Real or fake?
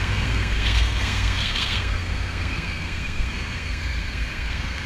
fake